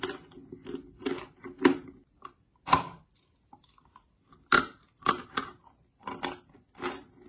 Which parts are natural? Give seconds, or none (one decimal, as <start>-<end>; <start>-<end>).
0.0-2.5; 5.1-7.3